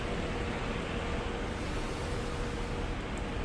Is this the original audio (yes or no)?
yes